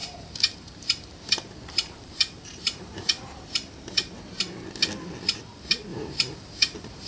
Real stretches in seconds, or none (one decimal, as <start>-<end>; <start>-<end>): 4.3-5.9